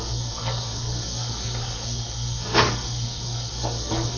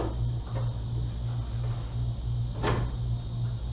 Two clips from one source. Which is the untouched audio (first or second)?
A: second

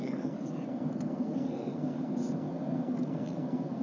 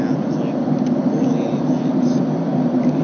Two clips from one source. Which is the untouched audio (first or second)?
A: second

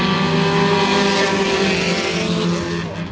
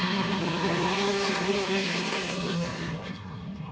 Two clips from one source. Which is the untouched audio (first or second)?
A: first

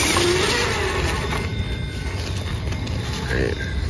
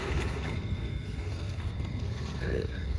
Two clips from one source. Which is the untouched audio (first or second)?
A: first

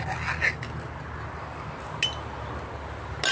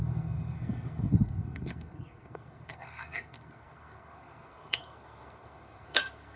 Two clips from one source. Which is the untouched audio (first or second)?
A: first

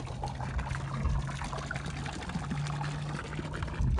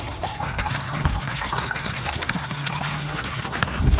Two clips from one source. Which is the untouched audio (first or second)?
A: first